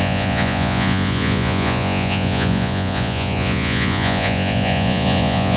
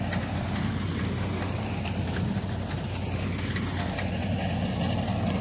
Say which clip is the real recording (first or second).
second